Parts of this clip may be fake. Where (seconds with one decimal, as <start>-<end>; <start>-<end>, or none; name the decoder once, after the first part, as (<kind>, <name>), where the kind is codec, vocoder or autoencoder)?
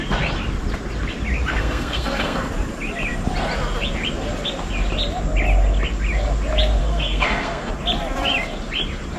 1.5-2.5 (codec, SNAC); 6.8-7.7